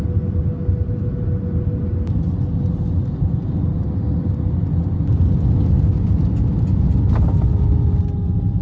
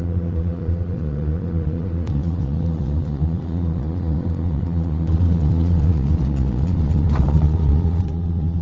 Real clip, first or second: first